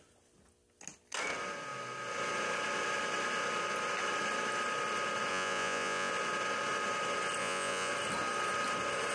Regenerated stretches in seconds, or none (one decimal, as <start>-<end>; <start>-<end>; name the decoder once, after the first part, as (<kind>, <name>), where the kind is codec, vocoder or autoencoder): 5.3-6.1 (vocoder, Vocos); 7.4-7.9